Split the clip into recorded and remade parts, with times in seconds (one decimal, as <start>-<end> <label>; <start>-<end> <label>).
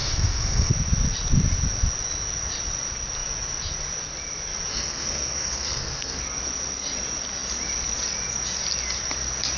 0.0-0.7 remade; 0.7-4.7 recorded; 4.7-6.2 remade; 6.2-9.6 recorded